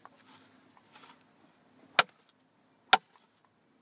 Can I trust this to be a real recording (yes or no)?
yes